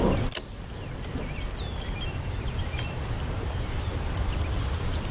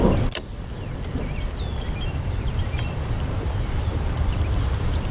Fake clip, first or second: second